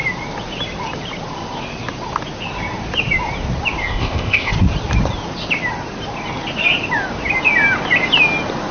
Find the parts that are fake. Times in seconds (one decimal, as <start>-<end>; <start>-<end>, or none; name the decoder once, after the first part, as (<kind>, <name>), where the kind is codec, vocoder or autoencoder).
3.8-4.5 (codec, ZipCodec)